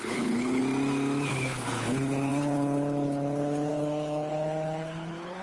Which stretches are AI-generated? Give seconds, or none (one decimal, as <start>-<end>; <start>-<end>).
0.0-0.6; 1.3-5.4